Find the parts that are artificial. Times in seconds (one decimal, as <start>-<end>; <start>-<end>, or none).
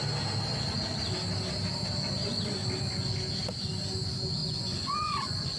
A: 4.4-5.6